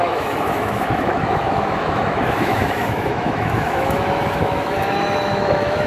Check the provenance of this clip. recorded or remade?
remade